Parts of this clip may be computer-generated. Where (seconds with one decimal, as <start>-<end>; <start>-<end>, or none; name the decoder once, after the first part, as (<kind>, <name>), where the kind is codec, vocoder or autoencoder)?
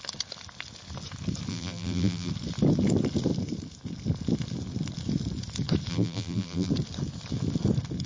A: 1.5-2.3 (vocoder, BigVGAN v2); 5.9-6.7